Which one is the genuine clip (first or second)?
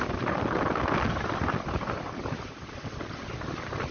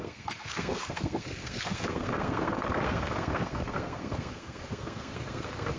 first